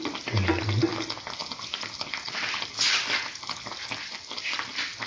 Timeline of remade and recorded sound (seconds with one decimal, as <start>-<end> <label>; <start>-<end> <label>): 0.0-5.1 recorded